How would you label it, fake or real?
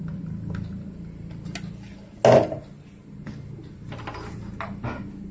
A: real